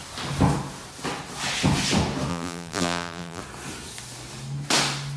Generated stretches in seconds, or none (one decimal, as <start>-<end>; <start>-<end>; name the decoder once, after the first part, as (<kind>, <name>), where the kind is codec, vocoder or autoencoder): 2.3-3.4 (vocoder, BigVGAN v2)